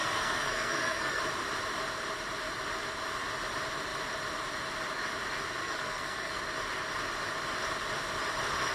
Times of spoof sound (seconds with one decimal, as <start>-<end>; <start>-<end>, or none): 0.0-1.2; 5.6-6.4